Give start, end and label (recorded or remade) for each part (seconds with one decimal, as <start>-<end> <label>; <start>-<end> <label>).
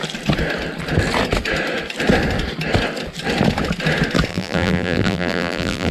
0.0-4.3 recorded; 4.3-5.9 remade